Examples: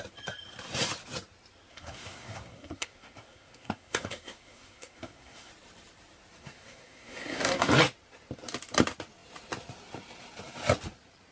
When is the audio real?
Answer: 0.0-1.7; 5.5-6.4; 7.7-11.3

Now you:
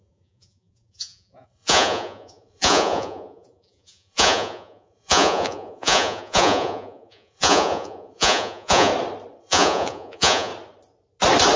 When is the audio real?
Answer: 8.9-9.4; 10.5-11.6